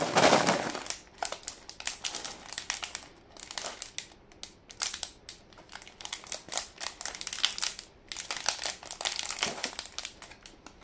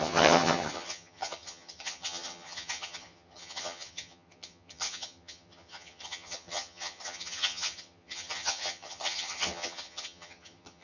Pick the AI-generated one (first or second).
second